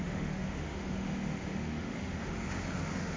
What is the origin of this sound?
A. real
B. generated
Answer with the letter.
B